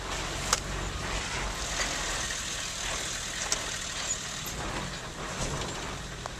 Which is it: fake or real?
real